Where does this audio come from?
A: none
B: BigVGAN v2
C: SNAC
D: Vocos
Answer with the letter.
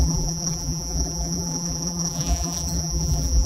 B